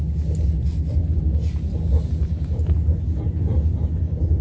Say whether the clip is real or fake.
real